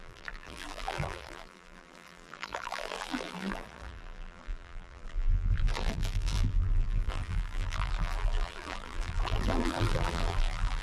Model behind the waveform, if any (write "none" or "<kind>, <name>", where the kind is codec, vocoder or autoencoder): vocoder, BigVGAN v2